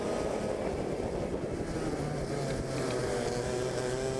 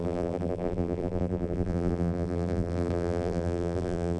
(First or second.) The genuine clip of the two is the first